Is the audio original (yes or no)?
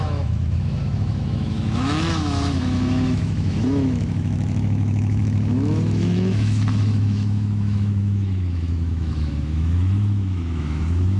no